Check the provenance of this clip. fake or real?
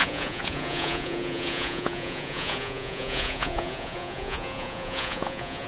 fake